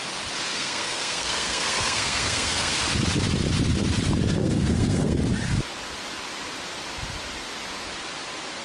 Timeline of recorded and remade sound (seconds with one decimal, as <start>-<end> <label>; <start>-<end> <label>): 0.0-0.5 recorded; 0.5-2.8 remade; 2.8-4.4 recorded; 4.4-5.2 remade; 5.2-8.6 recorded